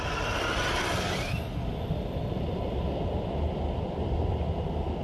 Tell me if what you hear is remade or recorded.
recorded